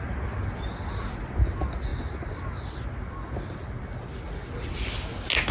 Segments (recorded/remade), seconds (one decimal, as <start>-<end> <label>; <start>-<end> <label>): 0.0-5.5 recorded